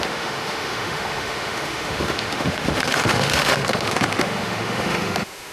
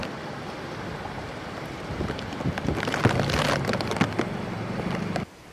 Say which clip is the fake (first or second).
first